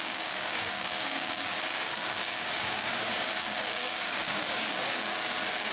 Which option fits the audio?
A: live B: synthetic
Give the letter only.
B